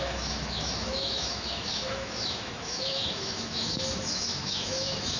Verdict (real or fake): fake